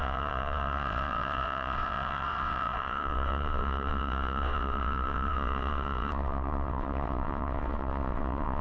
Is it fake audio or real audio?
fake